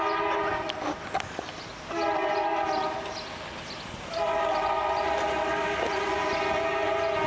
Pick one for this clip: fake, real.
real